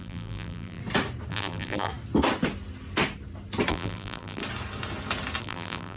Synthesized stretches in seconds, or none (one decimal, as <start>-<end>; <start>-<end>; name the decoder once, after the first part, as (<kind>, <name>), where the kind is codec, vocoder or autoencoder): 0.0-0.8 (vocoder, BigVGAN v2); 1.3-1.9; 3.7-4.4; 5.4-6.0